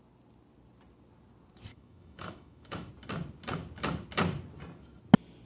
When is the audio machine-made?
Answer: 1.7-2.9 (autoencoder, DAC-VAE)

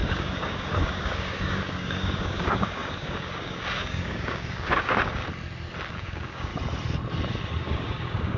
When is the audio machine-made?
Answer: 0.0-5.2 (codec, DAC); 5.9-6.5; 7.6-8.4

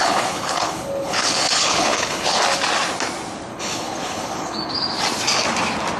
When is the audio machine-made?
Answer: 0.0-2.4 (codec, HILCodec); 3.5-4.7

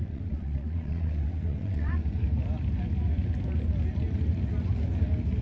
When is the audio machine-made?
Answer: 0.0-2.0 (vocoder, WaveNeXt)